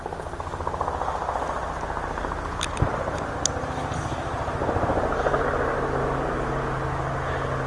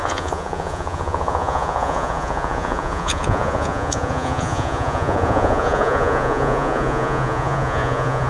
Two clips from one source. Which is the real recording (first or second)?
first